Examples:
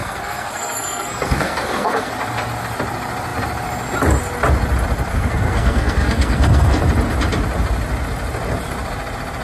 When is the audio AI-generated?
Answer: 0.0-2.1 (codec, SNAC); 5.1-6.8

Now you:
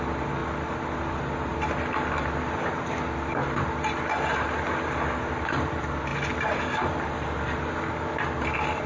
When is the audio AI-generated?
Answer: none